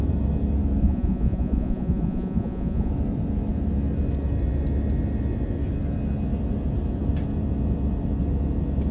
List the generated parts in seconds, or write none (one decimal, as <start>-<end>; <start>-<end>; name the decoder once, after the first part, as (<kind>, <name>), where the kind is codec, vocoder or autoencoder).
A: 0.8-2.9 (vocoder, Vocos)